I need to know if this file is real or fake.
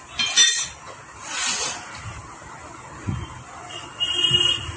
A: real